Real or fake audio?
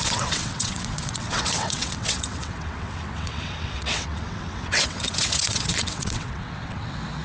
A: fake